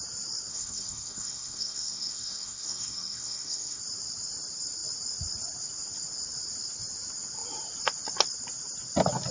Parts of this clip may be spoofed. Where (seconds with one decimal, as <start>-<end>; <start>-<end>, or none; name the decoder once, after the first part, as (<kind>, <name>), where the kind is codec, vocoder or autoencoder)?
0.5-3.8 (codec, SNAC)